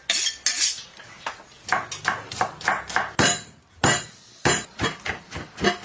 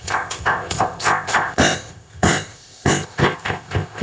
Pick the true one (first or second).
first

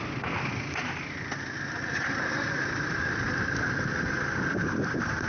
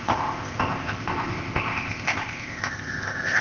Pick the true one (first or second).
first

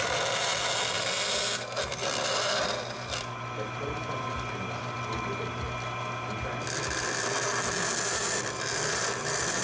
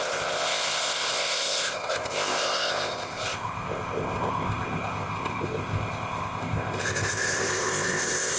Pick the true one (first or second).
first